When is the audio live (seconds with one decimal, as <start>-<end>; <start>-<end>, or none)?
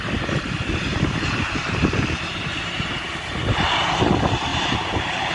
0.0-0.9; 3.4-4.5